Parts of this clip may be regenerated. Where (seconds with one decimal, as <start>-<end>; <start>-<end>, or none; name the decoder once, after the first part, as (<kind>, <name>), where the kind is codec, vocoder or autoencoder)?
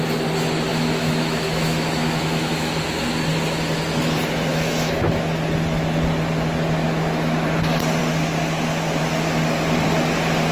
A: 0.7-2.7 (autoencoder, DAC-VAE); 4.5-5.2